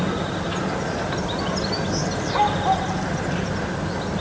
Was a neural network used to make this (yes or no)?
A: no